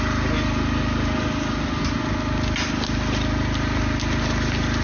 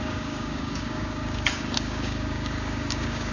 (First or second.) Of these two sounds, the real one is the first